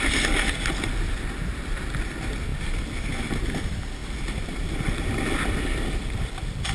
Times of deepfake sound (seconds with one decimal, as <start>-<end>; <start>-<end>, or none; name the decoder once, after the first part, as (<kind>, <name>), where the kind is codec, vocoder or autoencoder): none